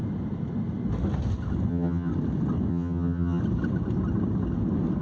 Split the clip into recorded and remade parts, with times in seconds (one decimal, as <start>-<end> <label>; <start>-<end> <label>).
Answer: 0.0-1.7 recorded; 1.7-2.1 remade; 2.1-2.7 recorded; 2.7-3.4 remade; 3.4-5.0 recorded